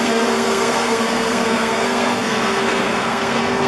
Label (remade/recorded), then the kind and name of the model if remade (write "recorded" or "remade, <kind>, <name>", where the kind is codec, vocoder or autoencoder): remade, codec, SNAC